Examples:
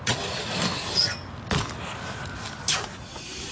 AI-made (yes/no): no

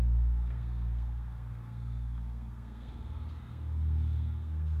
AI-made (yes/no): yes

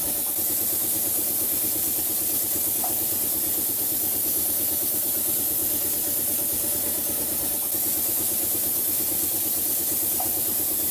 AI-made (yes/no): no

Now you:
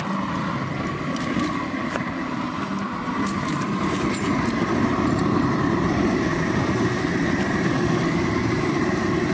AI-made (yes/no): yes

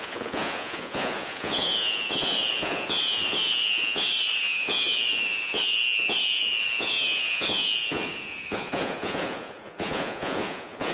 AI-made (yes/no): yes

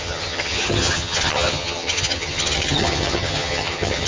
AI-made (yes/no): yes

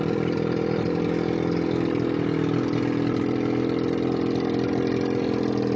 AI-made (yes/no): no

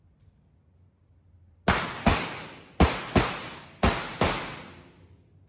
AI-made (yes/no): no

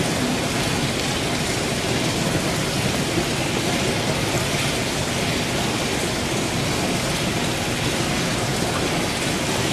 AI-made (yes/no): no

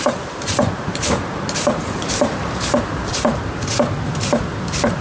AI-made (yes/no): yes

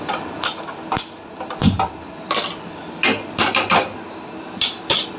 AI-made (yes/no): no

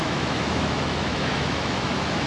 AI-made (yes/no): yes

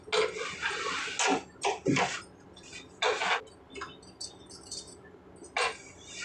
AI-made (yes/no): no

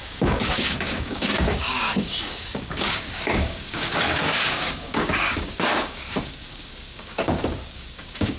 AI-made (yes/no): yes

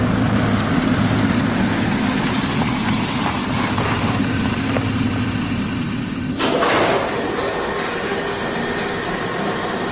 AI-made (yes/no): no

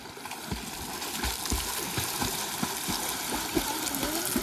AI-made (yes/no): no